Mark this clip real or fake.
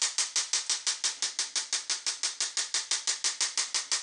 real